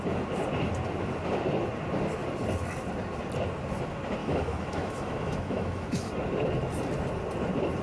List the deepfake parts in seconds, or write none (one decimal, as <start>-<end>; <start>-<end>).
4.2-6.1